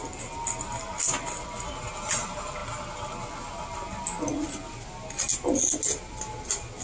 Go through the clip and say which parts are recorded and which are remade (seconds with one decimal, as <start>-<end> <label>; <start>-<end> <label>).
0.0-6.8 recorded